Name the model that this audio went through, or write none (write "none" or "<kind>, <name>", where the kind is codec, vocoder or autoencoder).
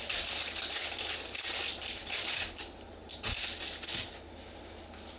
none